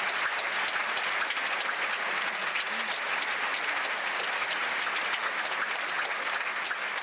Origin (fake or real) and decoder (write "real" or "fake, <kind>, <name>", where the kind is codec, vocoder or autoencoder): real